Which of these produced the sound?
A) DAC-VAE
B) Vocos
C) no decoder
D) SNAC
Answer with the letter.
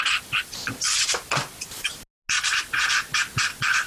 C